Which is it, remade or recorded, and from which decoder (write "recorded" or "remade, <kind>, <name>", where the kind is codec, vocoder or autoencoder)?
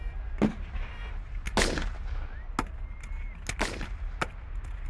recorded